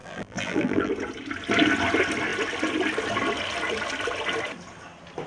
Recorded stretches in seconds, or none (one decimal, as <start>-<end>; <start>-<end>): 0.9-5.3